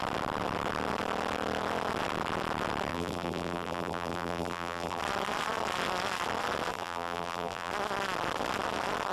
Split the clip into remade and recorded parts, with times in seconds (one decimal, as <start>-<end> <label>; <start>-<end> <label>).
0.0-2.9 recorded; 2.9-5.0 remade; 5.0-6.7 recorded; 6.7-7.7 remade; 7.7-9.1 recorded